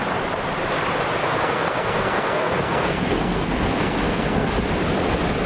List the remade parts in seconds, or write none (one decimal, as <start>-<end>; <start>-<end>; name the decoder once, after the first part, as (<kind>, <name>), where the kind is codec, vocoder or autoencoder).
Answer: 1.2-4.5 (codec, SNAC)